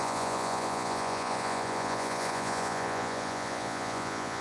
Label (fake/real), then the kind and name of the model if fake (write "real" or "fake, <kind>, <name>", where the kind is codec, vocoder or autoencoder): fake, vocoder, Vocos